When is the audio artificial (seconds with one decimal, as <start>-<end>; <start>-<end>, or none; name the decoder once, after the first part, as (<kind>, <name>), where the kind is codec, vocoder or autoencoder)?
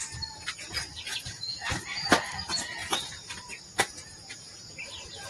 0.9-1.6 (vocoder, Vocos); 2.8-4.7